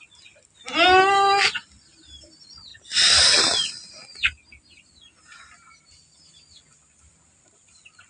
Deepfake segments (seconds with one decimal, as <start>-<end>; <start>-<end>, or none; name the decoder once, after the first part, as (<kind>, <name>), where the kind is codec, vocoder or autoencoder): none